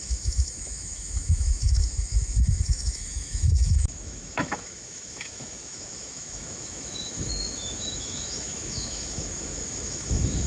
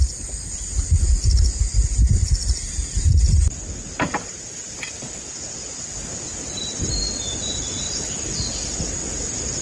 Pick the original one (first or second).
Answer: second